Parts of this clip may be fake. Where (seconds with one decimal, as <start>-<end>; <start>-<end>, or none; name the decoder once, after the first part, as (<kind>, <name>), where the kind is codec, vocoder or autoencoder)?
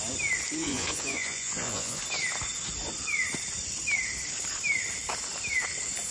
0.6-2.0 (vocoder, Vocos)